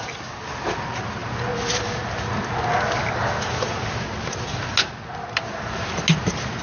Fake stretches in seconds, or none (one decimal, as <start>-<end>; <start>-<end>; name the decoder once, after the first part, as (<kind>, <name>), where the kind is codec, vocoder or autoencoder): none